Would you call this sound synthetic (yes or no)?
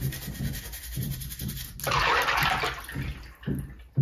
no